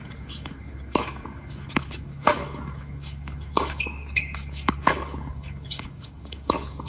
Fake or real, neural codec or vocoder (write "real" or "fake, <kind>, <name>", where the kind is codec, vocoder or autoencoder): fake, codec, DAC